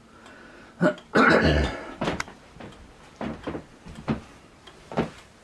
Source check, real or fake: fake